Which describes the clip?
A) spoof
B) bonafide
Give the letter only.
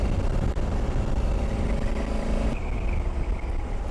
B